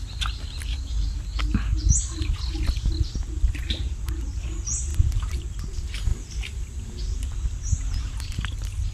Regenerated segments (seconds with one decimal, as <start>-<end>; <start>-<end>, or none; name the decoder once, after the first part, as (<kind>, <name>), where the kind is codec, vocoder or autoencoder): 4.9-5.6 (vocoder, BigVGAN v2)